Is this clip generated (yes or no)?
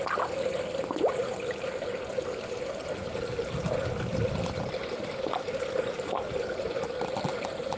no